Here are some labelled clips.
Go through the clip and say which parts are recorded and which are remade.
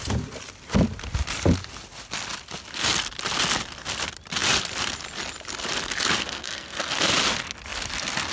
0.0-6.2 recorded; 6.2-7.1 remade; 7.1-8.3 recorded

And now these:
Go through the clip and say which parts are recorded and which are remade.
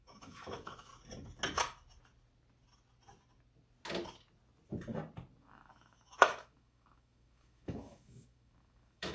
0.0-0.9 remade; 0.9-5.4 recorded; 5.4-9.1 remade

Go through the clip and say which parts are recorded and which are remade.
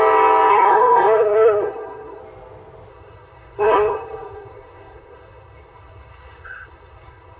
0.0-0.5 recorded; 0.5-2.2 remade; 2.2-2.9 recorded; 2.9-7.4 remade